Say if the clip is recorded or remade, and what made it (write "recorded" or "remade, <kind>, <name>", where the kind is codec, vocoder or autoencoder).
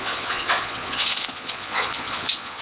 remade, vocoder, Vocos